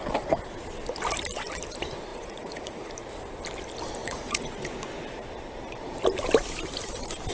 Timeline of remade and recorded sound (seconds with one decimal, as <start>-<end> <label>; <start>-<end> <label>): 0.0-2.1 recorded; 2.1-2.9 remade; 2.9-4.0 recorded; 4.0-4.8 remade; 4.8-7.3 recorded